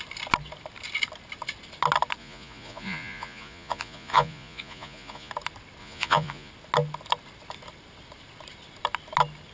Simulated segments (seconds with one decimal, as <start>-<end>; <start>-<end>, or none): 2.2-5.3; 5.8-6.5